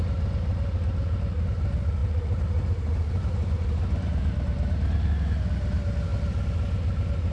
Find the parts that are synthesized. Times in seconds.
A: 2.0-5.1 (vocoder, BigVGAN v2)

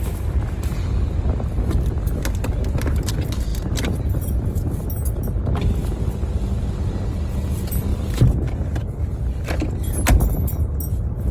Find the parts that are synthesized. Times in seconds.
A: none